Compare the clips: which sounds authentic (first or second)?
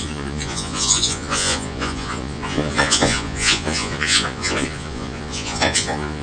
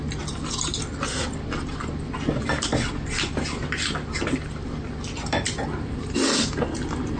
second